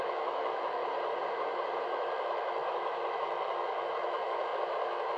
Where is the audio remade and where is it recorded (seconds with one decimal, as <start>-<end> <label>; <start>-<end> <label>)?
0.0-0.8 remade; 0.8-1.8 recorded; 1.8-5.2 remade